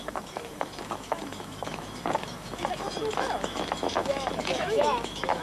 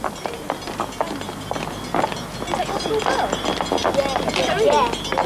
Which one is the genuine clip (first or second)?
second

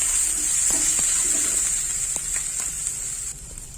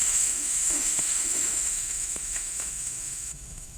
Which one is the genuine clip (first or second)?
first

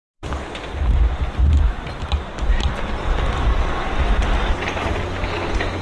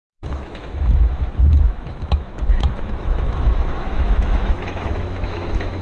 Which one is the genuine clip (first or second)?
first